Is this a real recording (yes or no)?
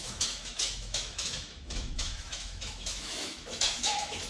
no